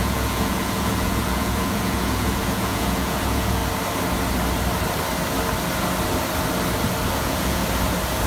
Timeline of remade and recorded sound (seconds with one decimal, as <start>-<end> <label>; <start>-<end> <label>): 0.0-3.6 remade; 3.6-7.1 recorded; 7.1-7.6 remade; 7.6-8.3 recorded

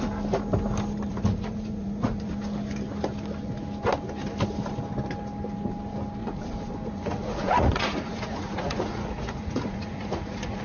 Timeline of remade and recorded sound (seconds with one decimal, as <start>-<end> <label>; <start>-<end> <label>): 0.0-1.1 recorded; 1.1-2.3 remade; 2.3-6.2 recorded; 6.2-10.6 remade

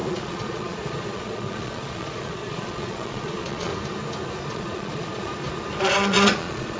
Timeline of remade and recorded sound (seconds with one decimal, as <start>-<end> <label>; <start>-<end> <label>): 0.0-3.7 remade; 3.7-4.5 recorded; 4.5-5.3 remade; 5.3-5.8 recorded; 5.8-6.8 remade

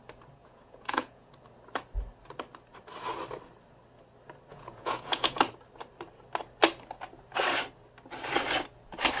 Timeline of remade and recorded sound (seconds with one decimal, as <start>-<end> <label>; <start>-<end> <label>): 0.0-0.4 recorded; 0.4-1.3 remade; 1.3-4.5 recorded; 4.5-5.4 remade; 5.4-9.2 recorded

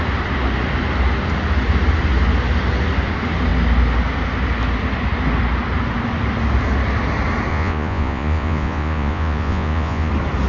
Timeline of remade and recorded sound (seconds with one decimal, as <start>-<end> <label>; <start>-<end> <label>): 0.0-7.5 recorded; 7.5-10.1 remade; 10.1-10.5 recorded